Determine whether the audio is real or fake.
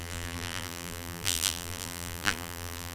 fake